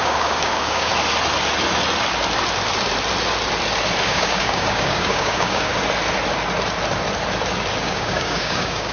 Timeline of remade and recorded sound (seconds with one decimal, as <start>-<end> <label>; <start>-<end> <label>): 0.0-0.9 remade; 0.9-4.0 recorded; 4.0-5.7 remade; 5.7-7.8 recorded; 7.8-8.9 remade